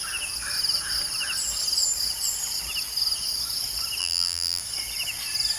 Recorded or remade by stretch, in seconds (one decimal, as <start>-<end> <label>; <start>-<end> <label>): 0.0-4.0 recorded; 4.0-4.6 remade; 4.6-5.6 recorded